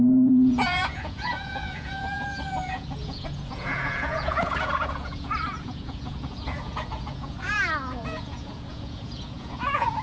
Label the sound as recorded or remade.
remade